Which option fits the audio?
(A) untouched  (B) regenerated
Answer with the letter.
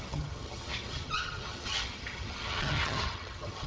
B